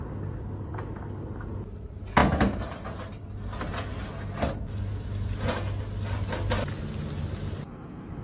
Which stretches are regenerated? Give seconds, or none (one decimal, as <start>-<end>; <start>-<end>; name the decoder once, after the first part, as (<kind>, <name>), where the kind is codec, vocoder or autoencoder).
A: none